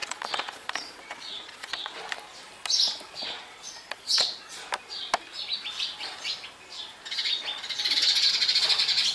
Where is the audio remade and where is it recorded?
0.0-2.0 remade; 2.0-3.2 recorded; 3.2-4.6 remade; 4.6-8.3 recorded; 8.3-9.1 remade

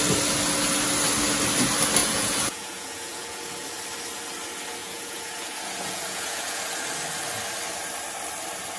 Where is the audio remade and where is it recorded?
0.0-2.0 recorded; 2.0-3.7 remade; 3.7-4.8 recorded; 4.8-6.6 remade; 6.6-8.8 recorded

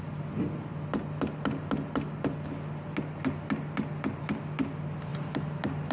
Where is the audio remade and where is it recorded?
0.0-5.9 recorded

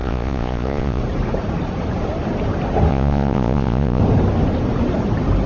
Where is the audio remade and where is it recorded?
0.0-1.0 remade; 1.0-2.9 recorded; 2.9-4.0 remade; 4.0-5.5 recorded

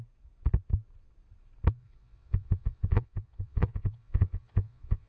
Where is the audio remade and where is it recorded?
0.0-1.8 recorded; 1.8-5.1 remade

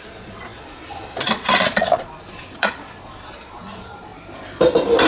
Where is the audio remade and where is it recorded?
0.0-4.1 remade; 4.1-5.1 recorded